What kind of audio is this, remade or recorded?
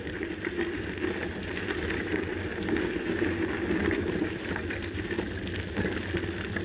recorded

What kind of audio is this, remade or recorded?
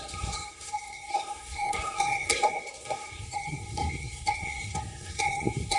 remade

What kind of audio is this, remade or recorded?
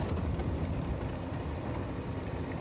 recorded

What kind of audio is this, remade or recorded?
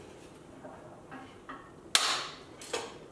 recorded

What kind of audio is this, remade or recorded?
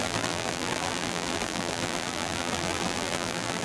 remade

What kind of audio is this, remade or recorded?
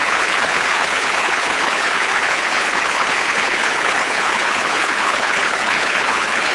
remade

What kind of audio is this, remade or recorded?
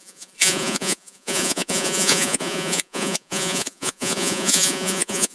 remade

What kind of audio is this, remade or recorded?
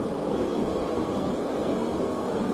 remade